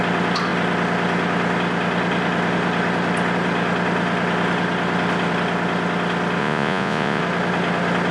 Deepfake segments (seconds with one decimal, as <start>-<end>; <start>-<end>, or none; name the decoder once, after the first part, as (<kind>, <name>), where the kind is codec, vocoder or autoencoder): 6.4-7.2 (vocoder, Vocos)